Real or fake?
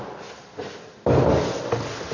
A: real